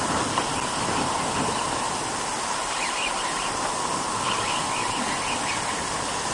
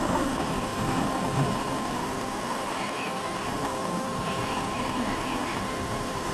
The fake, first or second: second